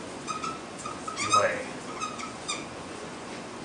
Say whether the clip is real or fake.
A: fake